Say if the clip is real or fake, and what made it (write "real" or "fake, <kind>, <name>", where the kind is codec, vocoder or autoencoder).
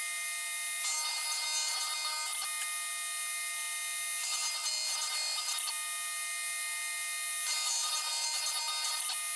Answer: real